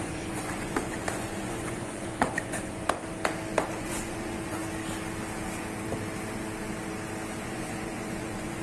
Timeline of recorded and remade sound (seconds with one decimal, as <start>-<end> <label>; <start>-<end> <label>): 0.0-3.0 remade; 3.0-3.8 recorded; 3.8-4.6 remade; 4.6-7.4 recorded; 7.4-8.6 remade